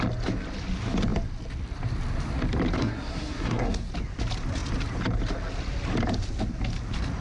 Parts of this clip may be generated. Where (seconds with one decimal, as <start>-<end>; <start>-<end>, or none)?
2.8-3.9